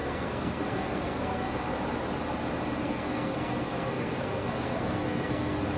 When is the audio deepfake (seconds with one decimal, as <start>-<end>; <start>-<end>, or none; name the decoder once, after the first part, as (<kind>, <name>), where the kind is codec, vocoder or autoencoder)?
0.0-1.6 (codec, SNAC); 2.8-5.8